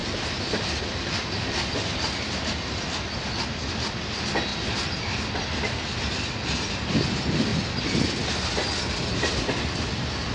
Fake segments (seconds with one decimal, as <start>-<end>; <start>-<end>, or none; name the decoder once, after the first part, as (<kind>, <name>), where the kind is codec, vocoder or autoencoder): none